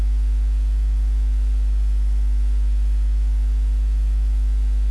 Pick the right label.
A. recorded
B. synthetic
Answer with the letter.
A